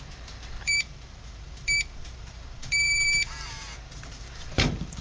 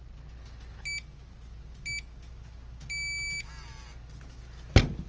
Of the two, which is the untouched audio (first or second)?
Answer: second